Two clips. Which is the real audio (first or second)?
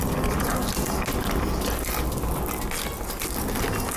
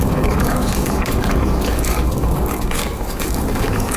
first